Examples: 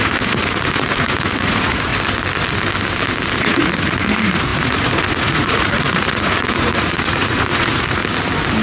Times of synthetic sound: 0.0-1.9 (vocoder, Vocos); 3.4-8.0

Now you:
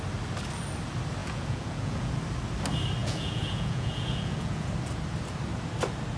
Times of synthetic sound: 1.2-2.1 (vocoder, Vocos); 3.0-4.7

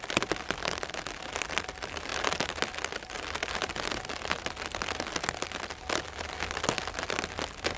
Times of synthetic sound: none

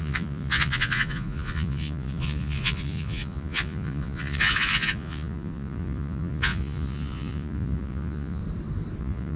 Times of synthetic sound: 0.0-8.4 (vocoder, Vocos); 9.0-9.4

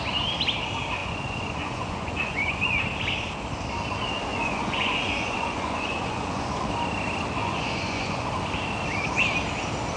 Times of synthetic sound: 1.0-2.8 (vocoder, Vocos); 4.3-6.7; 7.4-8.3

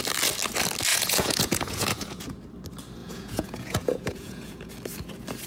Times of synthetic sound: 0.9-2.4 (vocoder, Vocos); 3.0-4.7